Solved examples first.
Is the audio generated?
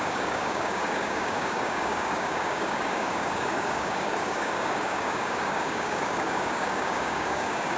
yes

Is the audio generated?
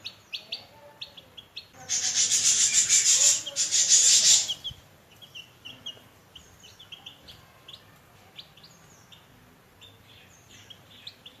no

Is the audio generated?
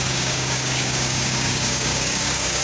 yes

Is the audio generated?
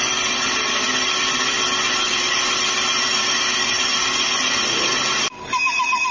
no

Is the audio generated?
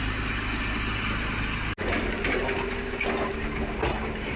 no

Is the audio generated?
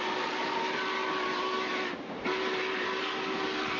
no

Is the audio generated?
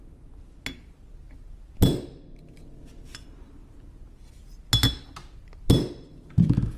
no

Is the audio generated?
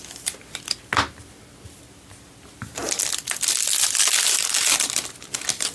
no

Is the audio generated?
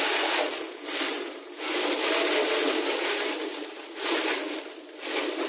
no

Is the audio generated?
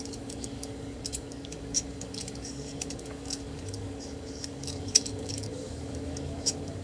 yes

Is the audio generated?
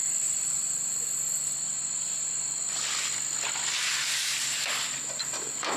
no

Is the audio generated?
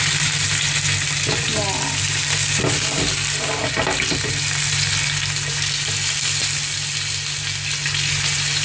no